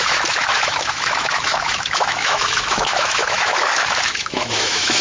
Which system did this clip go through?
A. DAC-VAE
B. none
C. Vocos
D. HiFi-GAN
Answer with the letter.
A